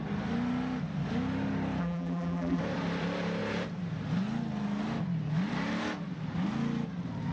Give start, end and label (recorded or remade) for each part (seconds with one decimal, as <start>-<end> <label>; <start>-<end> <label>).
0.0-1.8 recorded; 1.8-2.6 remade; 2.6-7.3 recorded